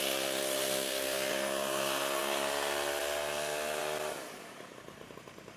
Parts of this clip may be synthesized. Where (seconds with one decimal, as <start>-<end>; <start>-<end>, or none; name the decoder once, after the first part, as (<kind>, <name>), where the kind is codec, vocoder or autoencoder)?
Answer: none